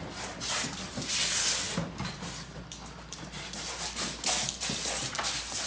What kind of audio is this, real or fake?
real